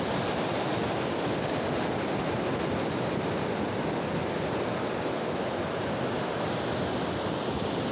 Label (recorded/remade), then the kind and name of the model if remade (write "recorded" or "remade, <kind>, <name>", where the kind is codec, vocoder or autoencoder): recorded